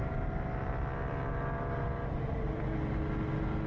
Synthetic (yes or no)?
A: no